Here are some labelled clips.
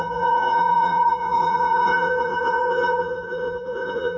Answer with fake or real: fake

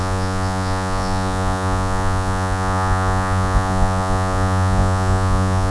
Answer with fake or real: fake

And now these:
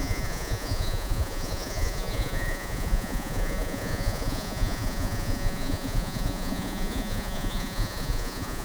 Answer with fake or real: fake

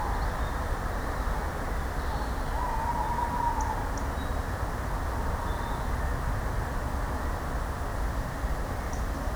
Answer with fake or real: real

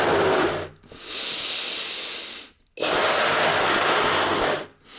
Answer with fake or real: real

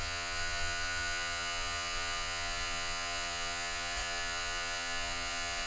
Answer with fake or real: fake